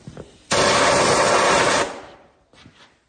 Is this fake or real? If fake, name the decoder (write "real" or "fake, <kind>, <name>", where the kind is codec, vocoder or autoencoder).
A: real